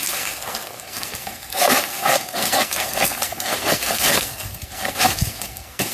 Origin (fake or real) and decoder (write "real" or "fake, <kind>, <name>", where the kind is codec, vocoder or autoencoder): fake, codec, SNAC